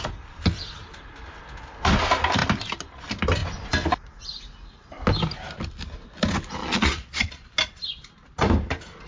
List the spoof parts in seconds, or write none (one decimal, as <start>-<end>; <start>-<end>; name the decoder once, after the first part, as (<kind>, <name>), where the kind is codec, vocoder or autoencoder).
6.6-7.5 (vocoder, Vocos)